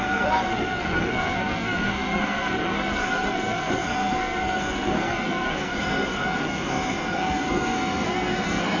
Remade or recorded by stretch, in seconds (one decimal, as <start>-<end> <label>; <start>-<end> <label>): 0.0-8.8 remade